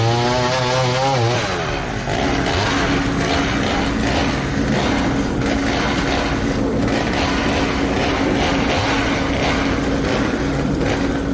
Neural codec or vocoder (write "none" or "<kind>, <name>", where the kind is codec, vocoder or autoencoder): none